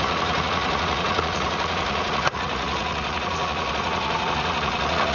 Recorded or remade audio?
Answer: remade